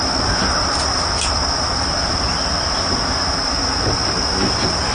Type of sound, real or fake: real